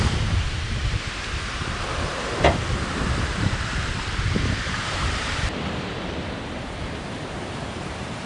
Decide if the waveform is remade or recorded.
remade